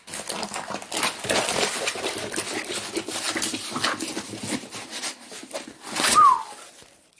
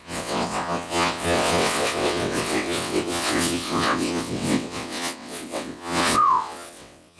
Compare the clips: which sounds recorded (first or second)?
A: first